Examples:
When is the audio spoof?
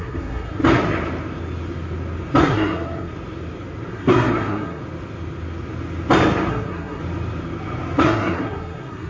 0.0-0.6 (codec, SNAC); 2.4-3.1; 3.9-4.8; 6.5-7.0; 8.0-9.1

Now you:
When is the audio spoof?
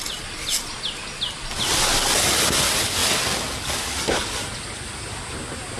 none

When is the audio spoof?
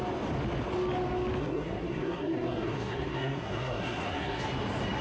1.4-4.4 (codec, SNAC)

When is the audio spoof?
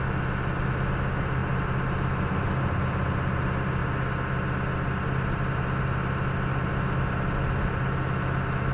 none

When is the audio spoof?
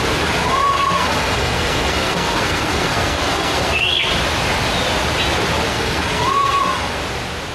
0.4-4.1 (codec, SNAC); 5.7-7.0